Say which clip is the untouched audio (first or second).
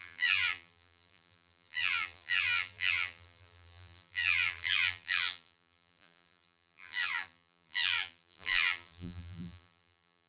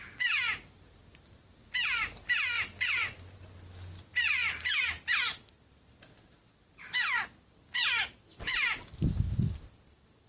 second